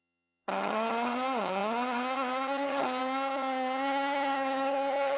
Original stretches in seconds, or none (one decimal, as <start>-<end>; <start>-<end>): none